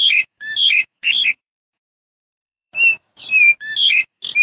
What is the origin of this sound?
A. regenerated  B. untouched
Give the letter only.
A